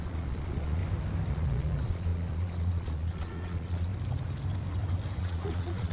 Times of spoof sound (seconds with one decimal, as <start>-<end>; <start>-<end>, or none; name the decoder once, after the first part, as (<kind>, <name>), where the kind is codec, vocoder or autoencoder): 0.0-0.8 (vocoder, Vocos); 1.3-3.9; 5.2-5.9

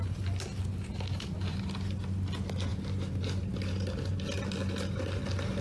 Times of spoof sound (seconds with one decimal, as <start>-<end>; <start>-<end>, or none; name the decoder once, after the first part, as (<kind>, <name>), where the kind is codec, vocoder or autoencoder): none

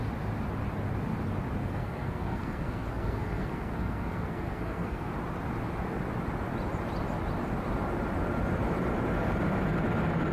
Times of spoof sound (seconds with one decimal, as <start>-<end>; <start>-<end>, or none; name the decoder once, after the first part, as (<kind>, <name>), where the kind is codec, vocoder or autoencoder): 1.6-5.1 (codec, SNAC)